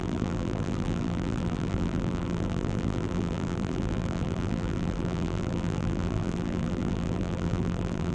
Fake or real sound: fake